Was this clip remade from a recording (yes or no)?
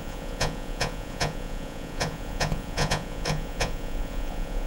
yes